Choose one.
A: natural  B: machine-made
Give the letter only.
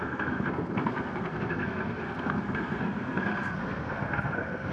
B